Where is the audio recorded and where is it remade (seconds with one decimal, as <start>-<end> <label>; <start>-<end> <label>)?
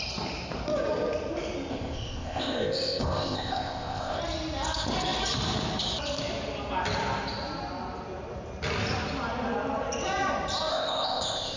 0.0-1.7 recorded; 1.7-4.2 remade; 4.2-10.7 recorded; 10.7-11.6 remade